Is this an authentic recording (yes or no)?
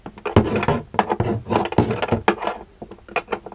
yes